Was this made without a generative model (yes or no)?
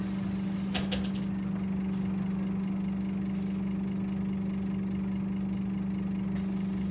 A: yes